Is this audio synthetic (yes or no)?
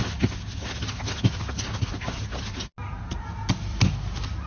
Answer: no